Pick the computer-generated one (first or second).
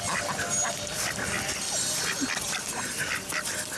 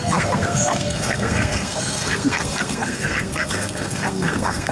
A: second